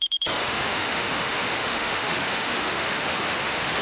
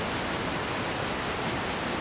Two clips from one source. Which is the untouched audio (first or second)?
second